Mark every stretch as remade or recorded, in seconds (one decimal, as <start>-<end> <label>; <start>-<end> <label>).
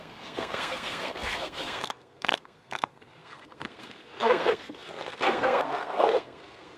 0.0-6.8 remade